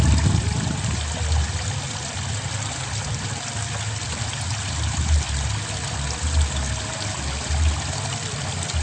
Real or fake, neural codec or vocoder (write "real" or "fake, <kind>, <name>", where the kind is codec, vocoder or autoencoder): real